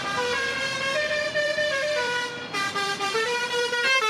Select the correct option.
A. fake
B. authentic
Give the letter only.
A